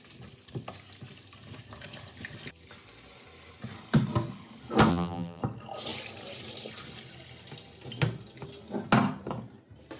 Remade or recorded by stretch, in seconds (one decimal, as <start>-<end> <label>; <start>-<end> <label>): 0.0-4.9 recorded; 4.9-5.4 remade; 5.4-10.0 recorded